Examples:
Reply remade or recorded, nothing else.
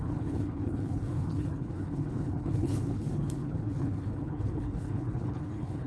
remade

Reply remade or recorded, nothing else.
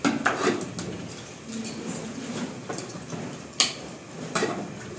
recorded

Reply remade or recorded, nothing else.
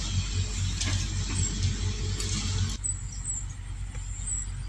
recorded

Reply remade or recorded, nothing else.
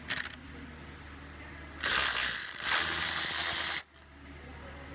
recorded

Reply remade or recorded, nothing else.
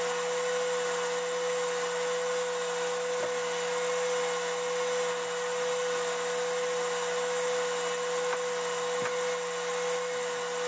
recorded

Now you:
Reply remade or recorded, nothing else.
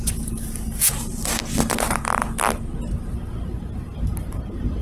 recorded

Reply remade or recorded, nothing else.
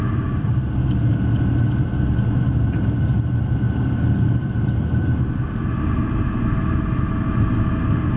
recorded